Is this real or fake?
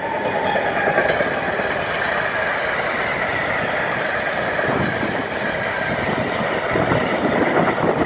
real